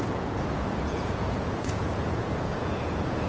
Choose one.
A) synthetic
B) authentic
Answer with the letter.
A